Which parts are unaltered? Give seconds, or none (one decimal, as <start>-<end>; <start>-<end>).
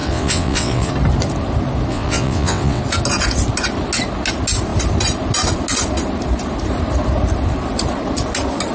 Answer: 0.9-1.9; 2.8-8.7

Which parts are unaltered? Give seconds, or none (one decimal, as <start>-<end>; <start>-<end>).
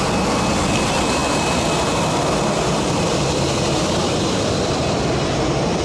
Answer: 0.0-4.0; 5.0-5.8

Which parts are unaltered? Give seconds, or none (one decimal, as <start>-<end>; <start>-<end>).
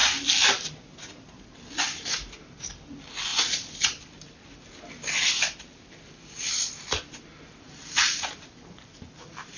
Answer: 0.0-9.6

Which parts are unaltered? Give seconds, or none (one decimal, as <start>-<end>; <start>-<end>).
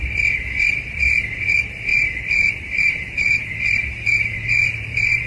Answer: 0.0-1.9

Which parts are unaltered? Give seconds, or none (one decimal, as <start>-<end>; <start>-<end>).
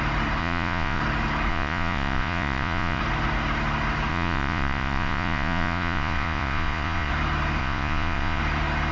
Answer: 0.0-0.4; 1.0-1.5; 3.0-4.1; 7.1-7.6; 8.4-8.9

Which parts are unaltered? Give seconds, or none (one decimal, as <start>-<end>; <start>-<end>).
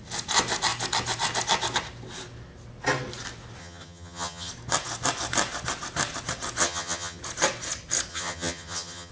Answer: 0.0-3.6; 4.5-6.6; 7.2-8.1